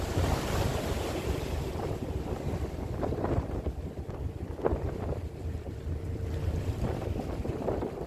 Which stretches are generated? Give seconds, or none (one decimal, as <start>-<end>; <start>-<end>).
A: 0.7-1.4